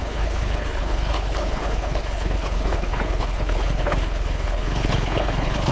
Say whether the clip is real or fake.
fake